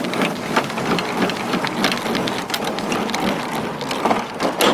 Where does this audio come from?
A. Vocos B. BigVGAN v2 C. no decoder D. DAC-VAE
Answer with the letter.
C